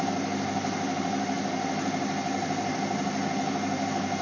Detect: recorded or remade recorded